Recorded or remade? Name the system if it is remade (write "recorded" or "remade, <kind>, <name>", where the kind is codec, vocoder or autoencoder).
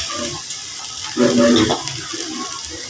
recorded